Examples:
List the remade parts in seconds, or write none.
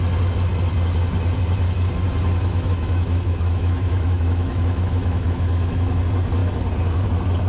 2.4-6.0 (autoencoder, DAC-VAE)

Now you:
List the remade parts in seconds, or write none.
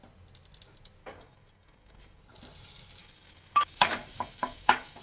1.0-2.2 (codec, DAC); 3.0-5.0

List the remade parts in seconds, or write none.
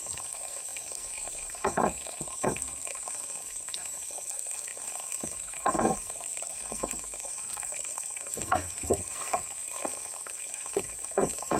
0.0-11.6 (codec, SNAC)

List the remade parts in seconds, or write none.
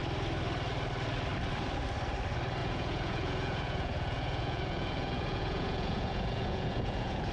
2.6-7.3 (vocoder, Vocos)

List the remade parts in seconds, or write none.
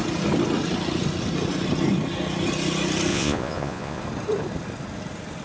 3.1-4.0 (vocoder, Vocos)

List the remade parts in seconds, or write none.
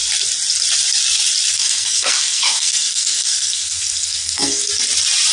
1.5-4.7 (codec, SNAC)